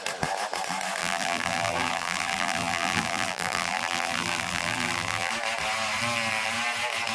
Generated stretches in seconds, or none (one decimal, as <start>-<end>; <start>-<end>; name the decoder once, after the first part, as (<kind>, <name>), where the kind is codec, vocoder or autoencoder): 1.0-5.3 (vocoder, BigVGAN v2)